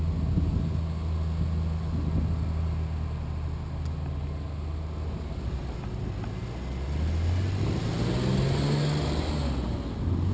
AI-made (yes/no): no